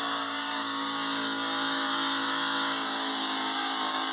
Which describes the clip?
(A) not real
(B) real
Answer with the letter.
A